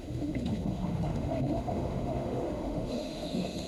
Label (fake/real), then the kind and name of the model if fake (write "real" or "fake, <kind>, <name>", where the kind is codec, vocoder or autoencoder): fake, autoencoder, DAC-VAE